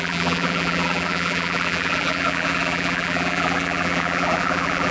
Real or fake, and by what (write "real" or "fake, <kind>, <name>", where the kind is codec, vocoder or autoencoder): fake, vocoder, BigVGAN v2